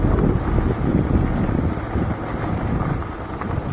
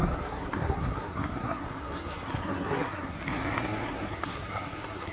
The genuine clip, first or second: first